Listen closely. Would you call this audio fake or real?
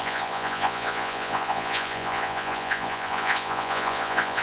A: fake